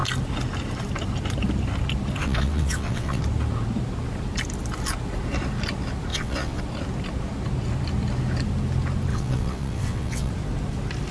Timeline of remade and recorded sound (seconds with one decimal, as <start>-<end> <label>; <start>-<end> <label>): 0.0-2.2 recorded; 2.2-3.2 remade; 3.2-6.1 recorded; 6.1-6.6 remade; 6.6-9.1 recorded; 9.1-10.3 remade; 10.3-11.1 recorded